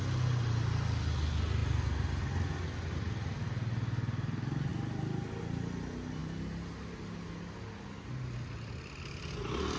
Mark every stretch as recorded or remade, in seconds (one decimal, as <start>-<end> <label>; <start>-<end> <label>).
0.0-9.8 recorded